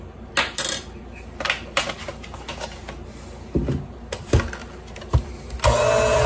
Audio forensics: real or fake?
real